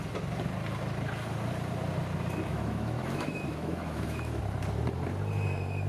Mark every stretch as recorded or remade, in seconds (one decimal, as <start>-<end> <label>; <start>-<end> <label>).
0.0-2.5 recorded; 2.5-4.4 remade; 4.4-5.9 recorded